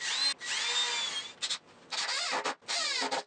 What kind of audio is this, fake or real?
real